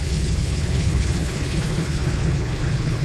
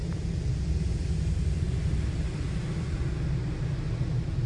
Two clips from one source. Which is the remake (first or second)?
first